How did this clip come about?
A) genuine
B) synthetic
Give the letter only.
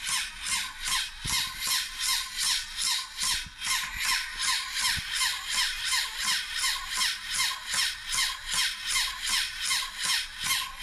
A